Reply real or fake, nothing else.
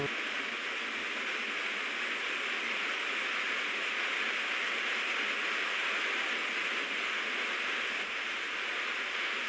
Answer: real